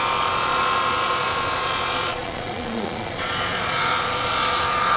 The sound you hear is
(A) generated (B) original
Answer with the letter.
A